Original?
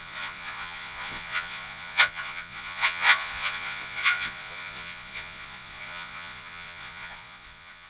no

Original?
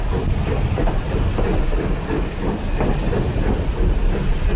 yes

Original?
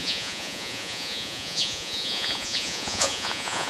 no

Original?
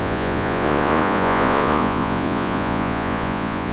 no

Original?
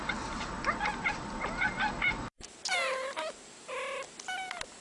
yes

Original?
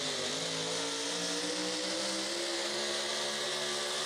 yes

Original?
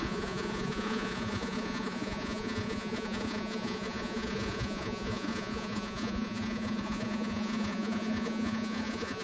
no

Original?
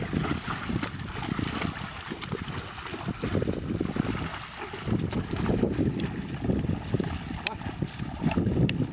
yes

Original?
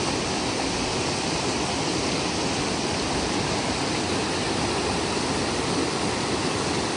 yes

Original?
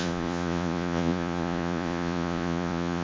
no